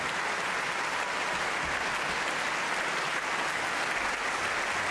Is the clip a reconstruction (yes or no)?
no